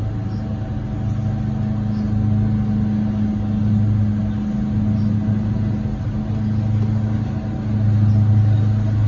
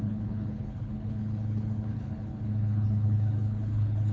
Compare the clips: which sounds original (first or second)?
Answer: first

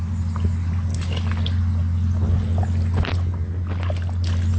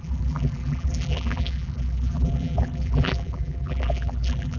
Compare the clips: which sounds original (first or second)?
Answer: first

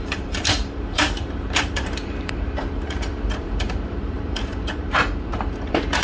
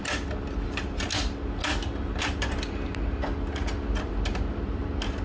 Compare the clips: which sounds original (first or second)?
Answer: second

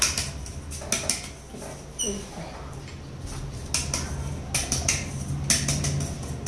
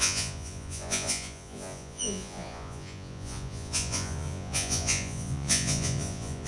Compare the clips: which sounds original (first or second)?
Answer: first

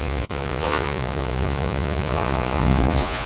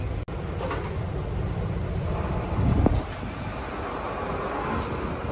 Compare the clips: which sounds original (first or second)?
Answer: second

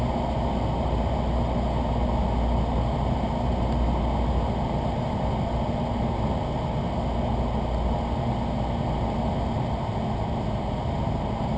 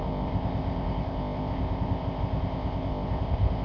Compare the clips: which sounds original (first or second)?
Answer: first